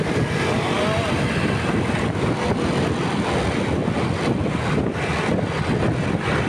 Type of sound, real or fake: real